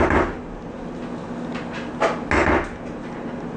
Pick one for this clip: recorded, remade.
recorded